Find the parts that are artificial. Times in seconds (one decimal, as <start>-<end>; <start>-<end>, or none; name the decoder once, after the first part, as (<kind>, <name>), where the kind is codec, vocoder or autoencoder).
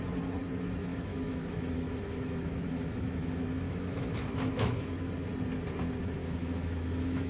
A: 0.8-5.1 (autoencoder, DAC-VAE); 6.0-7.3